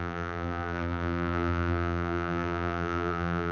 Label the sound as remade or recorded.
remade